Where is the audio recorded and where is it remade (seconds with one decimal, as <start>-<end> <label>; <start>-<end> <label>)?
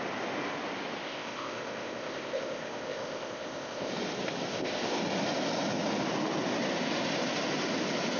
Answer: 0.0-1.0 recorded; 1.0-3.9 remade; 3.9-4.5 recorded; 4.5-5.0 remade; 5.0-8.2 recorded